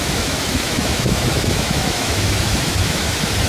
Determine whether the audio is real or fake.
fake